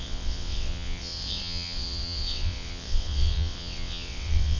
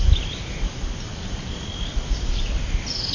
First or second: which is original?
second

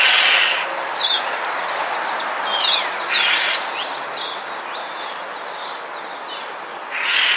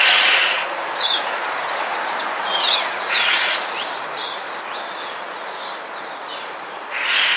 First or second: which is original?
first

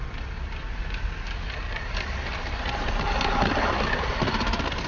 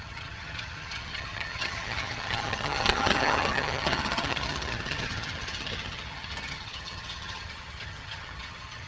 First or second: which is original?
first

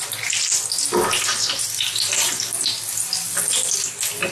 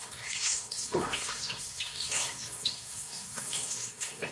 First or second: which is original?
first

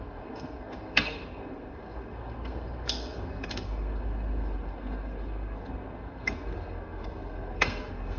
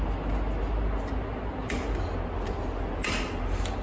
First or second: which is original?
second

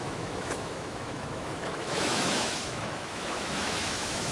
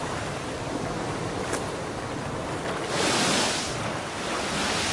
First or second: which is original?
second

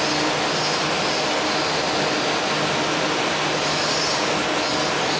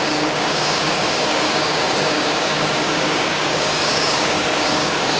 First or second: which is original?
first